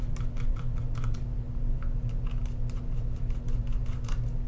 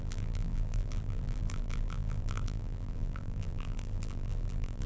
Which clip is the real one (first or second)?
first